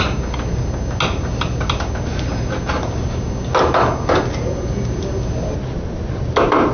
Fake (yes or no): no